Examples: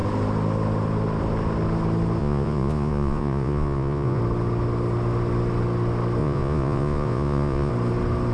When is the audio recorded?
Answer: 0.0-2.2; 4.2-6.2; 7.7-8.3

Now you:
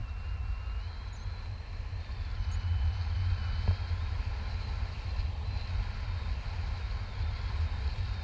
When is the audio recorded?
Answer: 0.0-8.2

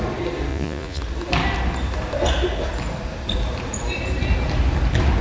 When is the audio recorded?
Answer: 0.0-0.5; 1.0-5.2

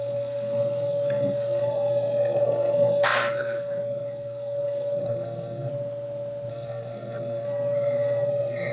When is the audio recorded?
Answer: 5.7-6.5

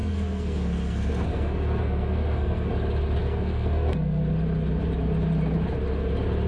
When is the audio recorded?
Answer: 2.7-3.2; 4.2-6.5

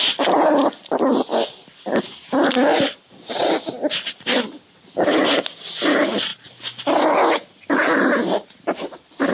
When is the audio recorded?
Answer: 0.0-2.7; 3.5-9.3

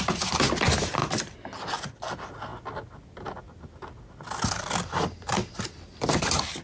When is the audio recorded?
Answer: 0.0-6.6

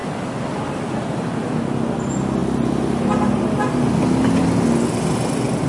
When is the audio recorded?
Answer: 0.0-5.7